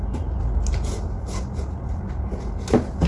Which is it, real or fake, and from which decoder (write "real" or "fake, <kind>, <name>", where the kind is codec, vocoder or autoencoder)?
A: real